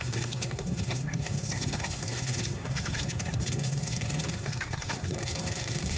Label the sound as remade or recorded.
remade